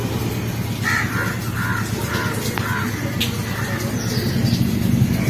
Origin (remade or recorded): recorded